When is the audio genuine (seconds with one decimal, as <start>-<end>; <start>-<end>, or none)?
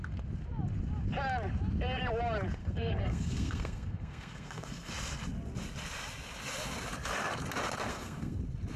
0.0-2.6; 4.9-7.9; 8.4-8.8